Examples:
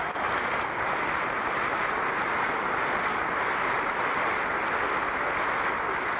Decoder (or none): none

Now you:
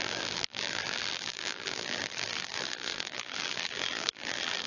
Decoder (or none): vocoder, BigVGAN v2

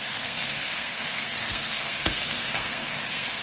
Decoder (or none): codec, SNAC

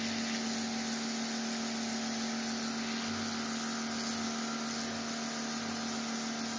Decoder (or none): none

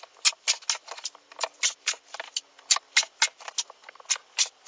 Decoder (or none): none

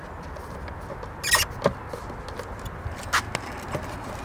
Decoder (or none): none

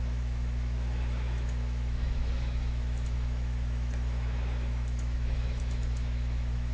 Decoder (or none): autoencoder, DAC-VAE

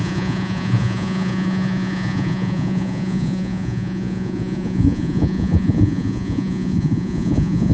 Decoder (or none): vocoder, Vocos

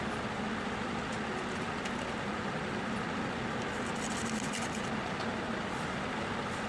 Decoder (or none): none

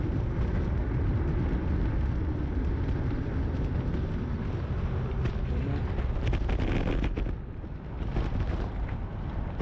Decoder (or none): none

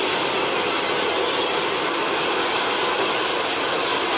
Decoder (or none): none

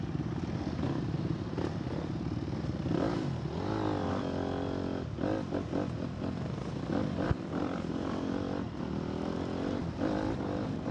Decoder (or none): none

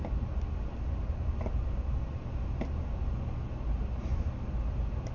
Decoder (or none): none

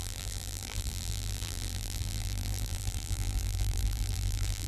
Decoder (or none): vocoder, BigVGAN v2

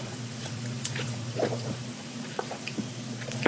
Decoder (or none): vocoder, Vocos